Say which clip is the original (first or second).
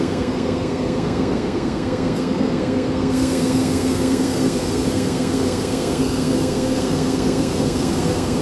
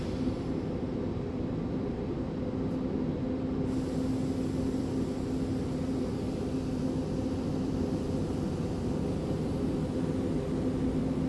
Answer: second